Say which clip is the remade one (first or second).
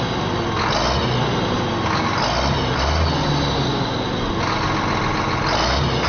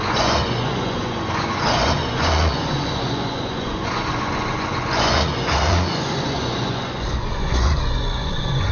second